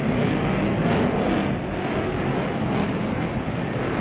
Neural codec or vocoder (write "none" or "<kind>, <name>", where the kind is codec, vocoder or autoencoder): none